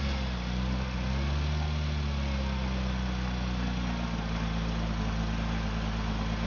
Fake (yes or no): no